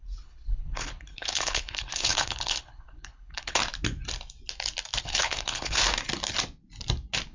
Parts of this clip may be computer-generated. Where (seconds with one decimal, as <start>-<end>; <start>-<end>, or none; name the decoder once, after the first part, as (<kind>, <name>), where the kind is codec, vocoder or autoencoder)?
0.0-3.6 (codec, HILCodec); 5.0-5.8